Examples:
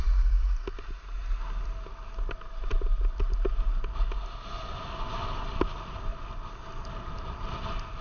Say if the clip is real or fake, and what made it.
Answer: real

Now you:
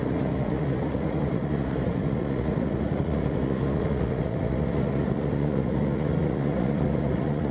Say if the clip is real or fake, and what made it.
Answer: fake, vocoder, Vocos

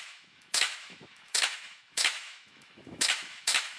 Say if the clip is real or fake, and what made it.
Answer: fake, autoencoder, DAC-VAE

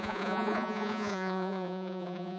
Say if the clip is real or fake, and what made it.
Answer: fake, vocoder, Vocos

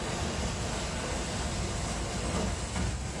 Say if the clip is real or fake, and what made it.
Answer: real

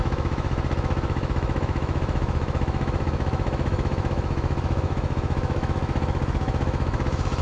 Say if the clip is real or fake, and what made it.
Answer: fake, autoencoder, DAC-VAE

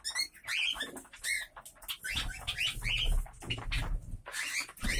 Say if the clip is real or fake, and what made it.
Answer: real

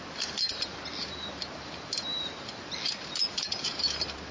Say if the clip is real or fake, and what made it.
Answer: real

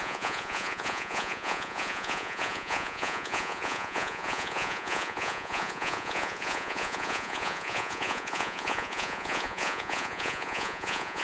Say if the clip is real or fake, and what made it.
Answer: fake, vocoder, Vocos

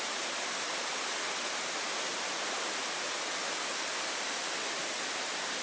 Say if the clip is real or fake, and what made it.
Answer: real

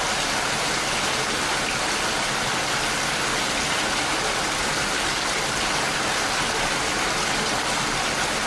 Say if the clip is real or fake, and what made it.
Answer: real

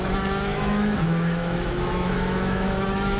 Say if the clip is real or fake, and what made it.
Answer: fake, autoencoder, DAC-VAE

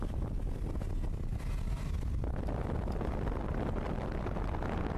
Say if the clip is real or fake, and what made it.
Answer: real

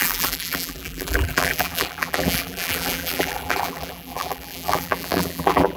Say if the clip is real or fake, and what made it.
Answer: fake, vocoder, BigVGAN v2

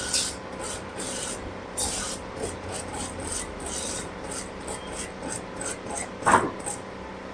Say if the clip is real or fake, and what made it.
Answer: fake, vocoder, BigVGAN v2